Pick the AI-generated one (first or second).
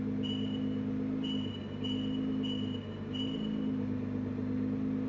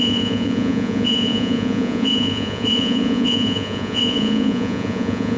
second